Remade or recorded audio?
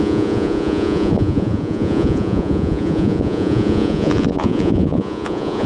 remade